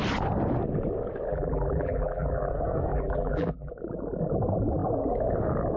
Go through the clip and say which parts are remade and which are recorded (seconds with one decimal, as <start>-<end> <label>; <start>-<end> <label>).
0.0-1.3 recorded; 1.3-2.5 remade; 2.5-2.9 recorded; 2.9-3.7 remade; 3.7-5.8 recorded